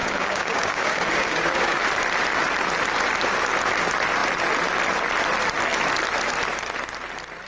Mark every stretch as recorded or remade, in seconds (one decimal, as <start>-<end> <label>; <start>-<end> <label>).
0.0-1.8 remade; 1.8-7.5 recorded

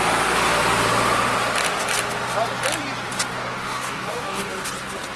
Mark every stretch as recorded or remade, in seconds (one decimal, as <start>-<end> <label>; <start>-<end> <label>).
0.0-3.3 recorded; 3.3-4.6 remade; 4.6-5.2 recorded

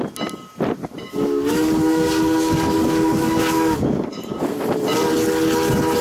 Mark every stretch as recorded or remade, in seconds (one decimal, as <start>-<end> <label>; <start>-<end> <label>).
0.0-0.8 recorded; 0.8-4.4 remade; 4.4-6.0 recorded

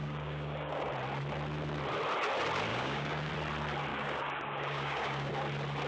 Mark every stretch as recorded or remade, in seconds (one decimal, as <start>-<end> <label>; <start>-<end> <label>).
0.0-0.9 remade; 0.9-2.7 recorded; 2.7-3.3 remade; 3.3-3.9 recorded; 3.9-5.3 remade; 5.3-5.9 recorded

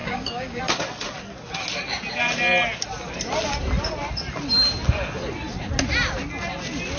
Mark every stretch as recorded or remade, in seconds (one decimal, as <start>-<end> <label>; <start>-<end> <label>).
0.0-0.6 remade; 0.6-7.0 recorded

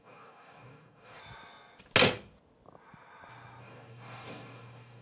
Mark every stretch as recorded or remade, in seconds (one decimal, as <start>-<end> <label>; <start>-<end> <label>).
0.0-1.2 remade; 1.2-3.6 recorded; 3.6-5.0 remade

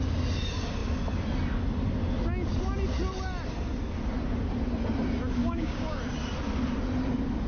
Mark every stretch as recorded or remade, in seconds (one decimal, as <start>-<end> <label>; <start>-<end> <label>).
0.0-5.4 recorded; 5.4-6.0 remade; 6.0-7.5 recorded

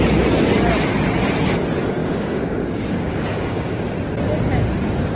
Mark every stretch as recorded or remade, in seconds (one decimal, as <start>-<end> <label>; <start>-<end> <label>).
0.0-2.0 recorded; 2.0-3.8 remade; 3.8-5.2 recorded